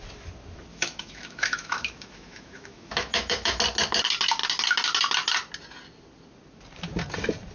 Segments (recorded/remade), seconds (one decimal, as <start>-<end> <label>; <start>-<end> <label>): 0.0-0.7 recorded; 0.7-3.6 remade; 3.6-7.5 recorded